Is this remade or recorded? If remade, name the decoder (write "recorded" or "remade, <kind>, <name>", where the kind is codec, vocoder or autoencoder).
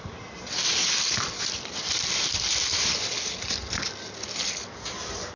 recorded